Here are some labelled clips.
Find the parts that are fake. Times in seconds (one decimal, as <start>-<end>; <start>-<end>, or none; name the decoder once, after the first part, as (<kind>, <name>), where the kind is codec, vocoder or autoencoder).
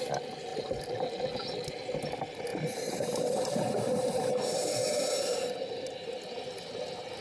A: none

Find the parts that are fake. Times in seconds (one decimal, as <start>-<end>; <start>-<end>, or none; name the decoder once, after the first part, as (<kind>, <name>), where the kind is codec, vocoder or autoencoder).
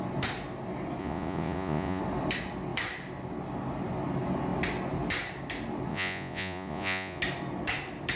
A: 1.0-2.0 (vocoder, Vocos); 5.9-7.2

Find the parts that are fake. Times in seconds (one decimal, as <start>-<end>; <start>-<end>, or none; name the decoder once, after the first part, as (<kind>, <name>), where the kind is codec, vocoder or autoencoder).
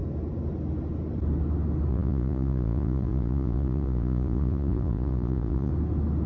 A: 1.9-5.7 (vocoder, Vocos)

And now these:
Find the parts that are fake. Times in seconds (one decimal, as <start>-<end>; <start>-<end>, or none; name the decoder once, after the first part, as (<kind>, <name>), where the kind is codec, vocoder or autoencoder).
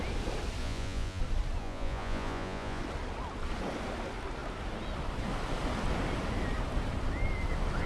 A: 0.6-1.2 (vocoder, Vocos); 1.6-2.8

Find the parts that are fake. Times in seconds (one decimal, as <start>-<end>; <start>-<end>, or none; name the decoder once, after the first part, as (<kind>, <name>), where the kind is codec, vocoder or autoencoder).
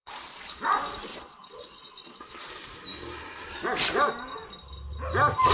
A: 0.0-0.6 (vocoder, Vocos); 1.1-2.5